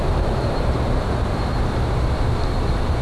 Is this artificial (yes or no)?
yes